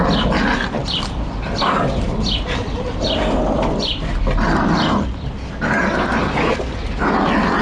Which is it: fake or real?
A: fake